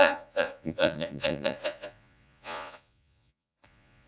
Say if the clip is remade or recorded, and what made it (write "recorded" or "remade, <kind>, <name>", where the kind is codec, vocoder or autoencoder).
remade, vocoder, Vocos